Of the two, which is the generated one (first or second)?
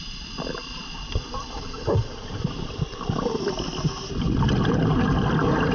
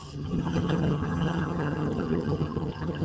second